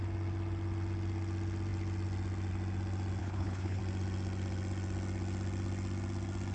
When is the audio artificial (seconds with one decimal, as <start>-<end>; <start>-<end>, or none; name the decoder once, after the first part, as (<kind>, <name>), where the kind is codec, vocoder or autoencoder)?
3.2-3.8 (codec, HILCodec)